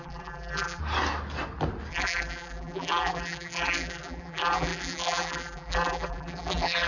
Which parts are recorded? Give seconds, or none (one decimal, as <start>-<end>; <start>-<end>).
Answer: 0.8-1.9